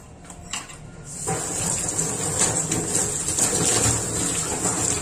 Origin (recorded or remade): recorded